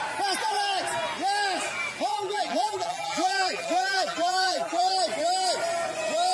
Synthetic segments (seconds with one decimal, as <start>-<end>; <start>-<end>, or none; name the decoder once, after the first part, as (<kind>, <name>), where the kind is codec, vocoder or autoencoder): 2.1-4.9 (vocoder, BigVGAN v2)